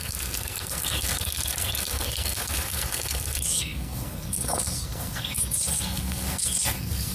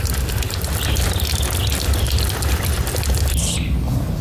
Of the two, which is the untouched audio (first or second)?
second